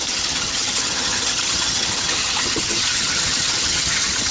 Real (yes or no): no